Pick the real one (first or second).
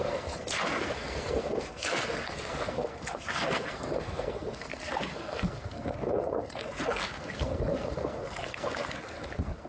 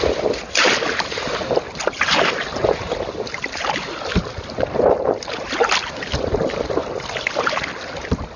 second